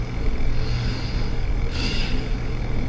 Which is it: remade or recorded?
remade